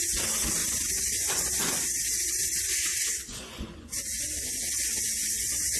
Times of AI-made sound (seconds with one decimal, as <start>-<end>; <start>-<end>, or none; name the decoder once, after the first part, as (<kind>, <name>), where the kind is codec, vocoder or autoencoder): 0.6-1.8 (vocoder, Vocos); 2.9-5.8